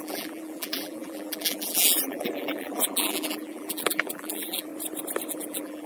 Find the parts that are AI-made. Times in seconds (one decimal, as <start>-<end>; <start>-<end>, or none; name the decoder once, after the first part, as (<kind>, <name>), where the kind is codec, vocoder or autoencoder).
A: 0.0-4.7 (vocoder, BigVGAN v2); 5.3-5.9